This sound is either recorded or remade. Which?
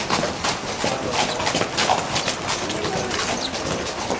recorded